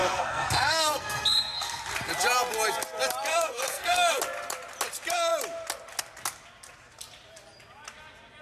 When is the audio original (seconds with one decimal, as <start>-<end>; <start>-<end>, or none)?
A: 1.8-3.3; 4.2-8.4